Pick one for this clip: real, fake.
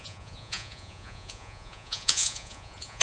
fake